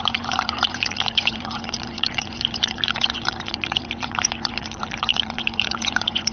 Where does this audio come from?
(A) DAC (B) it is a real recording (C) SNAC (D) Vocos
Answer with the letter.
D